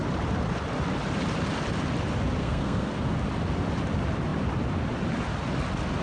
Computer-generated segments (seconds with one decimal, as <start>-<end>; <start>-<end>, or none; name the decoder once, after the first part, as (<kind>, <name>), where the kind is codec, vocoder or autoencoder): 2.4-2.9 (codec, SNAC)